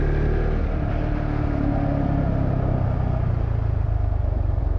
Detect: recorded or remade recorded